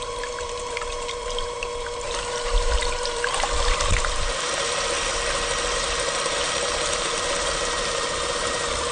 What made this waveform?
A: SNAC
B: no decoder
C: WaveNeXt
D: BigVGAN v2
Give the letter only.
D